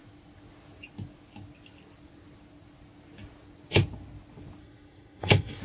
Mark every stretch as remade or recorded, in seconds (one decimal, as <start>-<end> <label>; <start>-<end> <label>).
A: 0.0-4.6 recorded; 4.6-5.6 remade